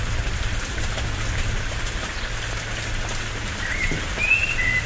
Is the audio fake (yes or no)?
no